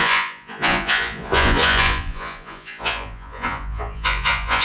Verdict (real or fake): fake